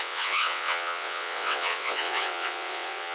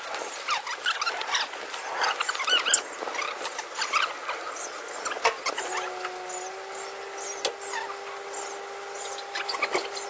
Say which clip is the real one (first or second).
second